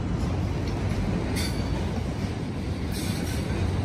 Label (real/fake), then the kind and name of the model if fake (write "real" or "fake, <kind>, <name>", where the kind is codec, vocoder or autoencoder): real